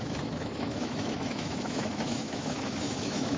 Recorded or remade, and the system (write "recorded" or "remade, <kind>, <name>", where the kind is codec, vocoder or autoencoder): remade, autoencoder, DAC-VAE